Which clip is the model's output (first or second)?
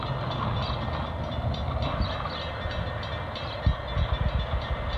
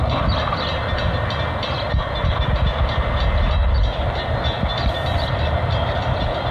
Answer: second